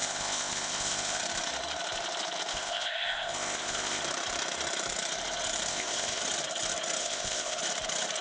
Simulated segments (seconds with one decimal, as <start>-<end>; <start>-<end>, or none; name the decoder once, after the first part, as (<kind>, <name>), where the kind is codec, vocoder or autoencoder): 0.0-1.2 (codec, ZipCodec); 2.5-4.0; 5.7-6.2; 7.0-7.6